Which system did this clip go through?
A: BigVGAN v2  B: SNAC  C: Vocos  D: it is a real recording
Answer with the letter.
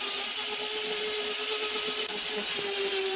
D